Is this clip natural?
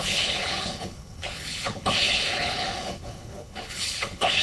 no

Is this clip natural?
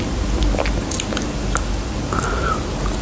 yes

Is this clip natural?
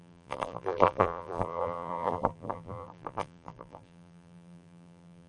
no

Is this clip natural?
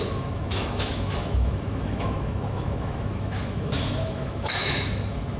no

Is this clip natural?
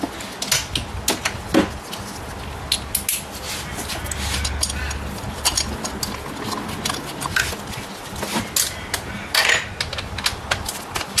yes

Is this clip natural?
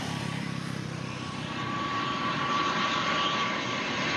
no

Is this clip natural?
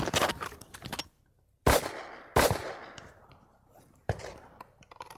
yes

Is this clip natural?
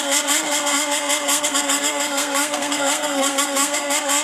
no